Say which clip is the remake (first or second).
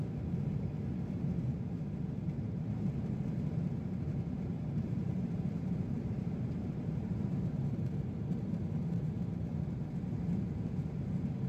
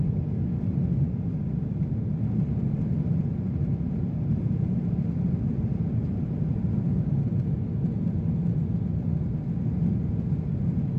first